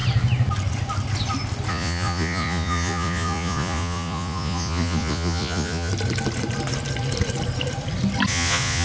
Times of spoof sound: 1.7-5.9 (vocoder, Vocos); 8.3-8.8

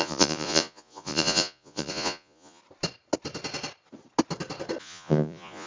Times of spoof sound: 0.0-2.6 (vocoder, Vocos); 4.8-5.7

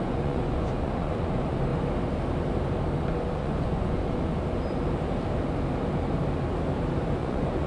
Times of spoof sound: 0.0-1.7 (vocoder, Vocos); 3.1-4.3; 7.2-7.7

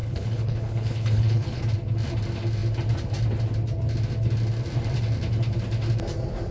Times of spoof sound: 0.0-1.6 (codec, HILCodec)

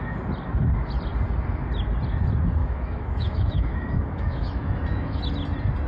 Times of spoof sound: 2.6-5.2 (autoencoder, DAC-VAE)

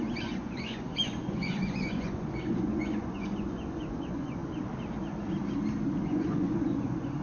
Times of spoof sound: 0.0-4.4 (vocoder, Vocos); 6.0-7.2

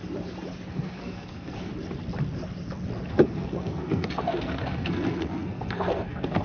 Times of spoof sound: 0.7-1.7 (codec, SNAC); 3.1-6.4

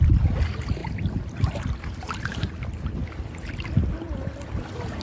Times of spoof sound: 0.8-2.5 (vocoder, BigVGAN v2); 3.0-5.0